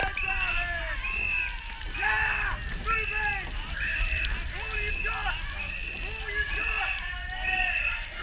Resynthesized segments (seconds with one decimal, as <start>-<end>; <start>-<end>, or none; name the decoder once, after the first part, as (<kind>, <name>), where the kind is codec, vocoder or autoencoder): none